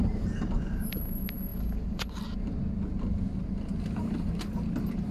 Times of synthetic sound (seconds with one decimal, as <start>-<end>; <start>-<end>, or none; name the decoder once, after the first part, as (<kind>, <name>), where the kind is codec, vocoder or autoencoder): none